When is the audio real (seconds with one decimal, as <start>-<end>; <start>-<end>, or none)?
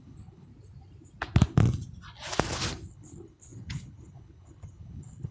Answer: 0.5-2.9